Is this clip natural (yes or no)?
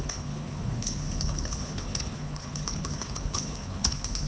no